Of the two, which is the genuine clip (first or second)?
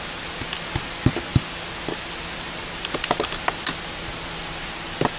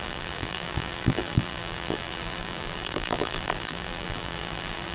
first